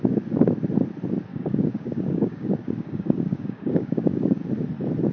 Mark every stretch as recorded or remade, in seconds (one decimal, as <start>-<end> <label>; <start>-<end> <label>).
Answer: 0.0-1.3 recorded; 1.3-4.4 remade; 4.4-5.1 recorded